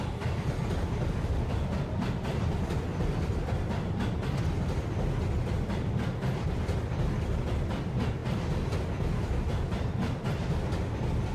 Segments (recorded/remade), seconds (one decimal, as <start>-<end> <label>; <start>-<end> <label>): 0.0-11.3 recorded